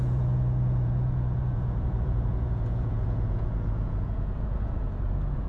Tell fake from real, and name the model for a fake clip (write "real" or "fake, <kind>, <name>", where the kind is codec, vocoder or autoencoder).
fake, vocoder, Vocos